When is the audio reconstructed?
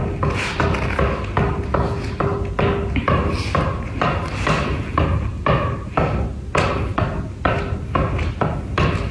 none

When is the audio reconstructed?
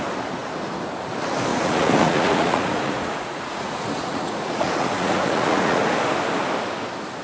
1.5-5.8 (vocoder, Vocos)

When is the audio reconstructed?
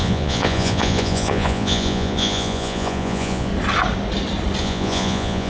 0.0-3.5 (vocoder, Vocos); 4.6-5.5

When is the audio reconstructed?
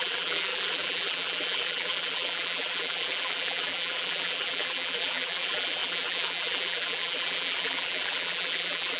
0.0-9.0 (vocoder, BigVGAN v2)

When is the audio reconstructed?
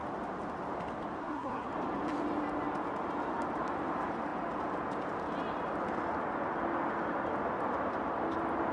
1.2-1.7 (codec, SNAC)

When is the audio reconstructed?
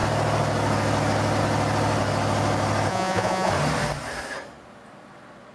2.9-3.5 (vocoder, Vocos)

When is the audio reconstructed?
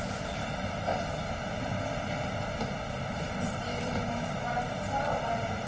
3.7-4.3 (autoencoder, DAC-VAE)